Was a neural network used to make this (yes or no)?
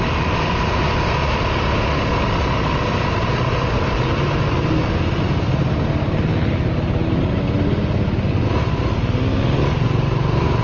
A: no